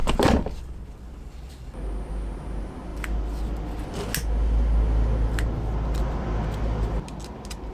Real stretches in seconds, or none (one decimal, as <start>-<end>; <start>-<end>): 0.0-7.7